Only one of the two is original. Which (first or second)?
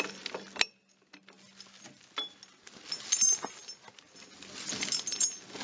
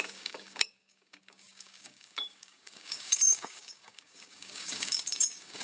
first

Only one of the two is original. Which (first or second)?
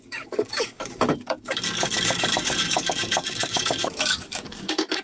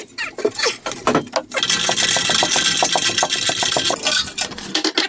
second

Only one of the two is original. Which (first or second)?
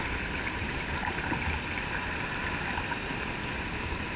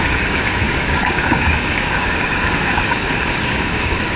first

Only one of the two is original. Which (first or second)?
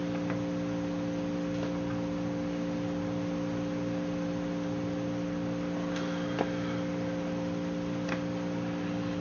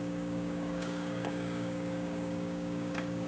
first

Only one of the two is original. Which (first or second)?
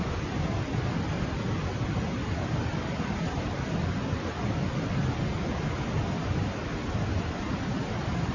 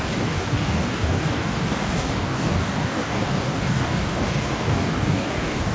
first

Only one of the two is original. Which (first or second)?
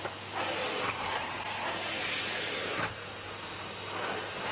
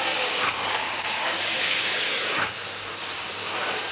first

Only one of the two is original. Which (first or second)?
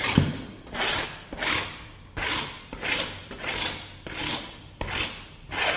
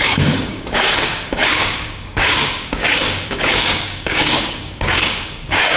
first